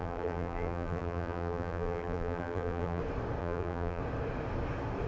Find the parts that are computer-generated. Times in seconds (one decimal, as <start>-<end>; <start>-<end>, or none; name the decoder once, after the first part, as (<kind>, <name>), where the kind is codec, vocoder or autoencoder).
0.0-3.0 (vocoder, BigVGAN v2); 3.4-4.0